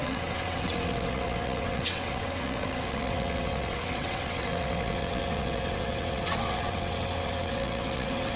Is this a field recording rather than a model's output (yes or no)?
no